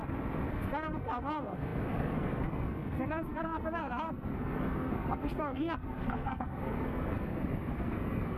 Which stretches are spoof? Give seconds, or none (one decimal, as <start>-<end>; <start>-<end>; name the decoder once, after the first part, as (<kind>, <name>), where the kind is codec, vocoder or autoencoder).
0.5-8.4 (codec, SNAC)